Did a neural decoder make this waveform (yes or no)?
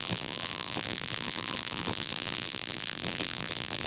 yes